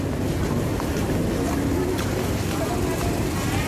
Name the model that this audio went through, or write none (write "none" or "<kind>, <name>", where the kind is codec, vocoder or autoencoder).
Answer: none